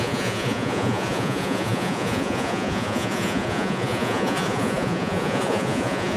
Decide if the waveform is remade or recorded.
remade